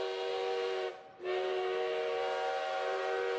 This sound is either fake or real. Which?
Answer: real